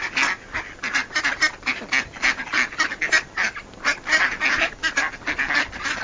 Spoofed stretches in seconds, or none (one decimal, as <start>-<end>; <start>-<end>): none